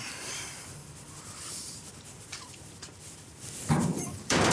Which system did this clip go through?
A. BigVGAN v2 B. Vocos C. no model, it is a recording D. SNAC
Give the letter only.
A